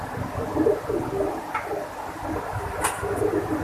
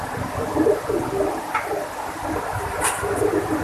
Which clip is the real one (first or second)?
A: first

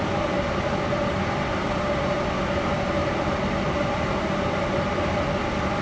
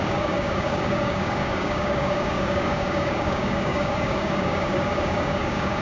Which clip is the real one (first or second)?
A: first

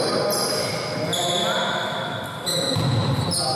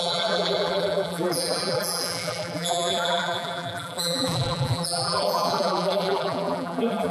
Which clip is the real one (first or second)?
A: first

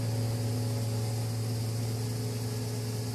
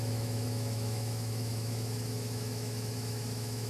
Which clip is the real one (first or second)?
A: first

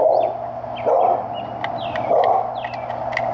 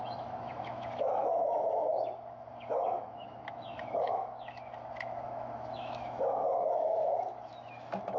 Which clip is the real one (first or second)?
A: first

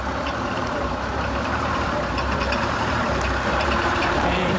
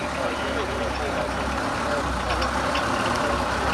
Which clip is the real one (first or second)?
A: second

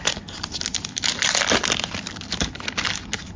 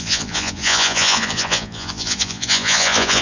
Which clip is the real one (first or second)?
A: first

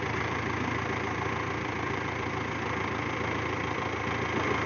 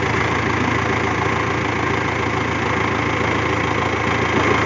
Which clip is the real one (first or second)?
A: second